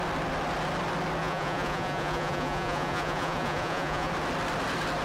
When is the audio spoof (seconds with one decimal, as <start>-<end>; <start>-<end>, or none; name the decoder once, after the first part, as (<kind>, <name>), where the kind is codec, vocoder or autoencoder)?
1.2-4.1 (vocoder, Vocos)